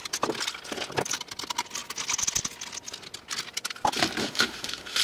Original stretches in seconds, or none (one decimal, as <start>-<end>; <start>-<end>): 0.0-4.2